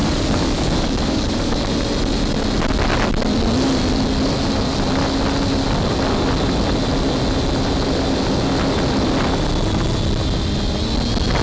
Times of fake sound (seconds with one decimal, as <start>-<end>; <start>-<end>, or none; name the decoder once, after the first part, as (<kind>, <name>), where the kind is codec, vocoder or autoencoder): 0.0-1.7 (codec, DAC)